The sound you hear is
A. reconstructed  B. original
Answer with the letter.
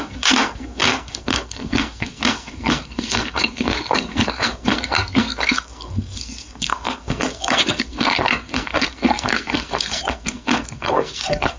A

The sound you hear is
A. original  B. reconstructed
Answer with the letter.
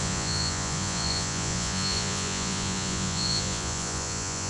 B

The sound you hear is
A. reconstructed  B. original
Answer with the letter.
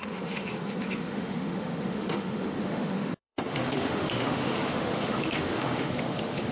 A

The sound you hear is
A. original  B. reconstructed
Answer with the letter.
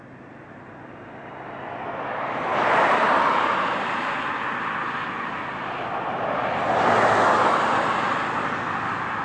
A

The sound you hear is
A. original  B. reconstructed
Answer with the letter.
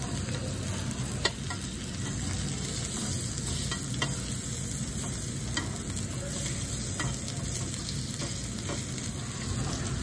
A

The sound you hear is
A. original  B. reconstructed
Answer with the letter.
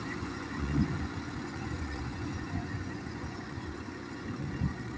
B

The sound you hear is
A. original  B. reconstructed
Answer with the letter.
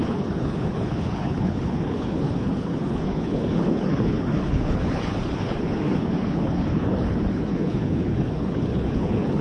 B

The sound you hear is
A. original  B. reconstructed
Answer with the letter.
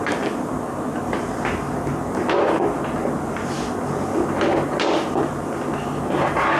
A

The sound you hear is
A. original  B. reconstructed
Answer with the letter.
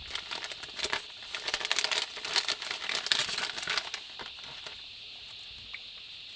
A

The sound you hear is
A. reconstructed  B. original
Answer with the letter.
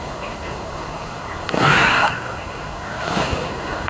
A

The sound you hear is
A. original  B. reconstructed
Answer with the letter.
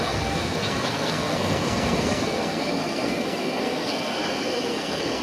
B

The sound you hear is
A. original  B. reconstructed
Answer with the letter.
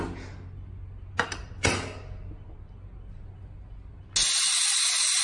A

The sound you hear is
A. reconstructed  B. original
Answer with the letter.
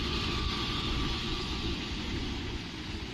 A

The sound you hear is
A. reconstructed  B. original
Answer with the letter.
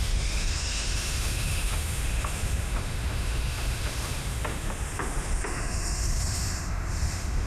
A